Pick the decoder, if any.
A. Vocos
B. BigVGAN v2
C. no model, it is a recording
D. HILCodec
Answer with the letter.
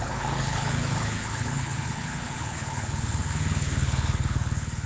D